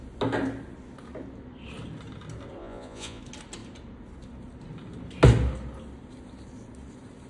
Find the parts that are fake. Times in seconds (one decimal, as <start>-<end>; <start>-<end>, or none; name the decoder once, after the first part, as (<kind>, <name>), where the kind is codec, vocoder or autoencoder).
2.6-3.2 (vocoder, Vocos)

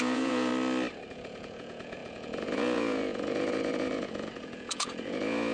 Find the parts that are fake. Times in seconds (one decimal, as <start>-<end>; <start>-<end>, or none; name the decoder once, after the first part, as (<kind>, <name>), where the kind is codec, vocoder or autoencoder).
0.0-0.5 (vocoder, Vocos); 1.1-5.5

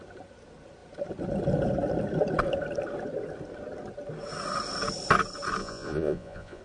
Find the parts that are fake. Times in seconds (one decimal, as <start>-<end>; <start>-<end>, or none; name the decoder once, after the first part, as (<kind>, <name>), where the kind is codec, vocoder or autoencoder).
5.6-6.6 (vocoder, Vocos)

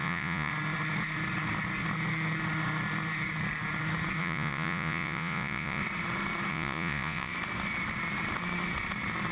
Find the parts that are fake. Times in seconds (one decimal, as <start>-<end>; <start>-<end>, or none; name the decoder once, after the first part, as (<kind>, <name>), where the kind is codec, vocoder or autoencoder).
0.0-0.5 (vocoder, Vocos); 4.2-5.8; 6.5-7.3

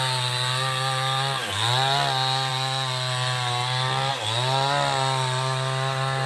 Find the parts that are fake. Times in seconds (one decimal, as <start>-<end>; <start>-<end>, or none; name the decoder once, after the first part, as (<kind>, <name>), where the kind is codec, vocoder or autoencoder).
none

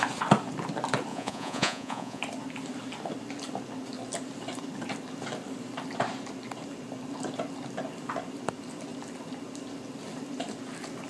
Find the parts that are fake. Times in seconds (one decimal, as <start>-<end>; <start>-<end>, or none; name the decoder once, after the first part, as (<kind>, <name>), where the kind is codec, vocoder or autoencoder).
1.1-2.2 (vocoder, Vocos)

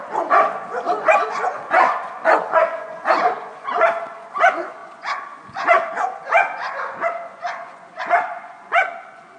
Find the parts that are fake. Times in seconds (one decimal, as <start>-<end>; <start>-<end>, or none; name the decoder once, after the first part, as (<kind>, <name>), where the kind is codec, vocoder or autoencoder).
0.0-9.4 (vocoder, Vocos)

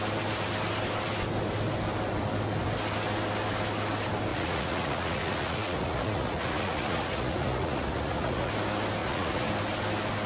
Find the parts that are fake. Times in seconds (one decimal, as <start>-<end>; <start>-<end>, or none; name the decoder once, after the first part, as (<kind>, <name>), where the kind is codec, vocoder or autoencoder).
4.3-8.5 (vocoder, Vocos); 9.0-9.5